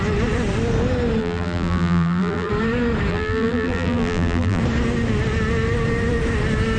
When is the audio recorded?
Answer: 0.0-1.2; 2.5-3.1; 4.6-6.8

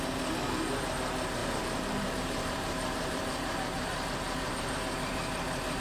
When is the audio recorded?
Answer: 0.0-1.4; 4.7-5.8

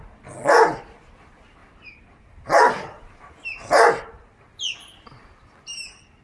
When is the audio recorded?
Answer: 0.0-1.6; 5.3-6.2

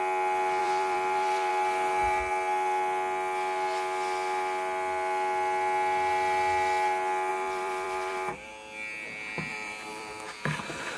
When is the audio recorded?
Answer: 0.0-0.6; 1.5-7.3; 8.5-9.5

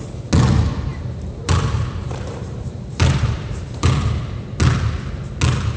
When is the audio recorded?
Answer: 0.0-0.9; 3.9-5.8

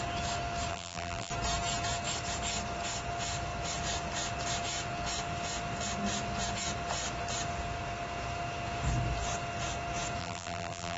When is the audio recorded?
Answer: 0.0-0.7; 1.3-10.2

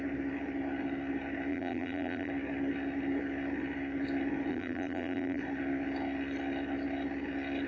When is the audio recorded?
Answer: 0.0-1.5; 2.3-4.5; 5.4-7.7